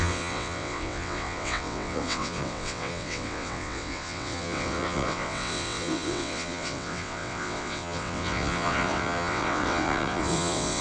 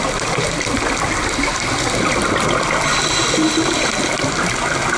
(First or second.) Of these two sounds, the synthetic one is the first